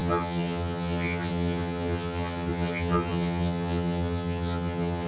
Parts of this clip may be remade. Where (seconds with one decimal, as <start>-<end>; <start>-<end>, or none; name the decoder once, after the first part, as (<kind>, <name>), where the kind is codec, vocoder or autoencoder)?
0.0-5.1 (vocoder, HiFi-GAN)